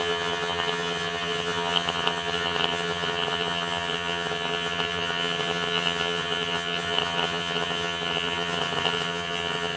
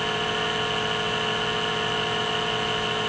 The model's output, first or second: first